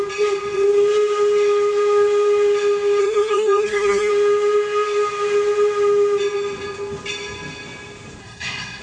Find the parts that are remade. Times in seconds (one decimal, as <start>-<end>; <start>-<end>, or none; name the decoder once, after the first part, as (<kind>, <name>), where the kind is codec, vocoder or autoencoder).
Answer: 3.0-4.1 (codec, SNAC); 8.2-8.8